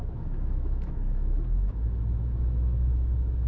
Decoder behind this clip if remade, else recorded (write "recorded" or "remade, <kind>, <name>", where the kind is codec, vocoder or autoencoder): remade, autoencoder, DAC-VAE